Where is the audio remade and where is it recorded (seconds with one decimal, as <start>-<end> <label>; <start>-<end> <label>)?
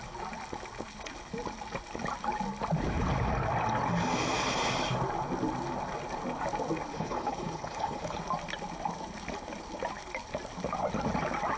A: 0.0-6.9 recorded; 6.9-8.2 remade; 8.2-11.6 recorded